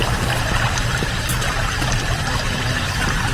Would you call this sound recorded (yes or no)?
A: yes